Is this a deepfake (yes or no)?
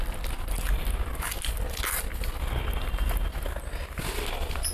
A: no